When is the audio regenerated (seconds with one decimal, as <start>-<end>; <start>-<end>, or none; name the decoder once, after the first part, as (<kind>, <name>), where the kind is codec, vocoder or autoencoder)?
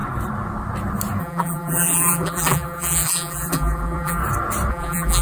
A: 1.2-4.2 (vocoder, BigVGAN v2); 4.7-5.2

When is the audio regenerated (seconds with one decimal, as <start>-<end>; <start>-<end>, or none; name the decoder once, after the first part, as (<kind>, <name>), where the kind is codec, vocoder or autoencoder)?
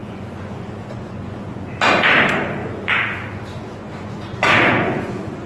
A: 0.0-1.7 (vocoder, Vocos); 2.6-5.5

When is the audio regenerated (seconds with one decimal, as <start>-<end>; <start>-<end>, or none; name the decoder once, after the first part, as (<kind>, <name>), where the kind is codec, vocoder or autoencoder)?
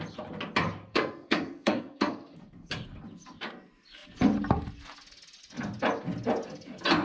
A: 0.9-2.7 (codec, SNAC)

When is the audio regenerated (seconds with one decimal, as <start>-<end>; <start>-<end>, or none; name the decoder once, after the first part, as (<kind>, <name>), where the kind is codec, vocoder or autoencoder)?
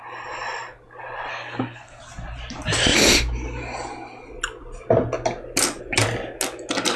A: 1.3-2.0 (codec, SNAC)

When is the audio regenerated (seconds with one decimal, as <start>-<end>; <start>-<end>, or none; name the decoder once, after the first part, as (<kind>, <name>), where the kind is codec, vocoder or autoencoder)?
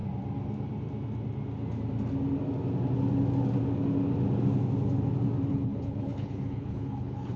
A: 5.5-7.4 (codec, HILCodec)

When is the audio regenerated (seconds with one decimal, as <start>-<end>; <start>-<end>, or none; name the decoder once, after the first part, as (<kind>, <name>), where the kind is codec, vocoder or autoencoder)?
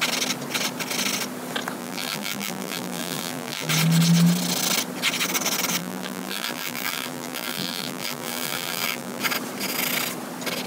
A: 1.8-3.7 (vocoder, BigVGAN v2); 5.8-9.2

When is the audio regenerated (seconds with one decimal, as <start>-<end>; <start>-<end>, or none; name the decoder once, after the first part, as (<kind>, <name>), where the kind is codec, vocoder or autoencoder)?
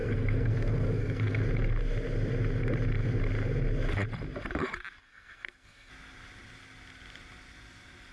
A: 0.0-1.4 (codec, SNAC); 5.0-5.9